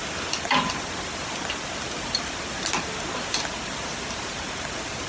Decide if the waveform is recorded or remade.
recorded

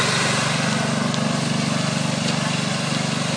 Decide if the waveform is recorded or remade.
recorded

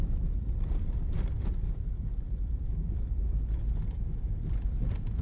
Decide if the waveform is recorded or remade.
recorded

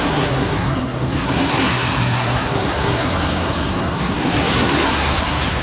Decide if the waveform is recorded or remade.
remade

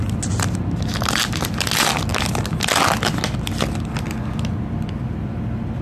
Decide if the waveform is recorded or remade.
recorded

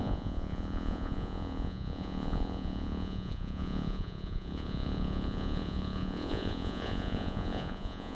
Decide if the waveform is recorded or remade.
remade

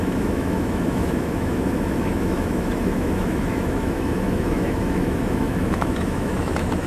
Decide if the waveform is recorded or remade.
remade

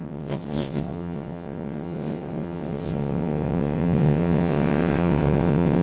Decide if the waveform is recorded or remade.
remade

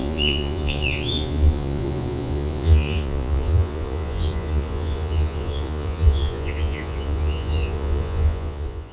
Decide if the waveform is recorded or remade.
remade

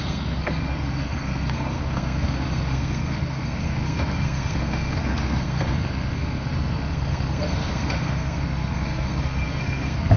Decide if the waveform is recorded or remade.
remade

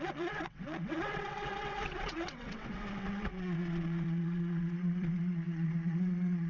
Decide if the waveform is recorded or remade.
remade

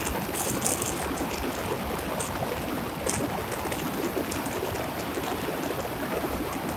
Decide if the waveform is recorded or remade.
recorded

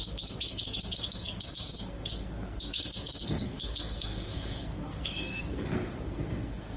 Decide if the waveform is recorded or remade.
remade